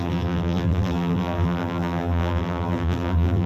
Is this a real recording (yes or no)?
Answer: no